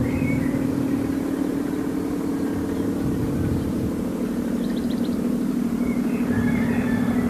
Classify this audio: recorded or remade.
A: remade